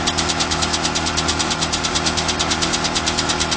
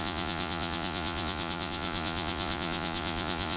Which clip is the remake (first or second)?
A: second